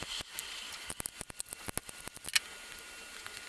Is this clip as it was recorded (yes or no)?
yes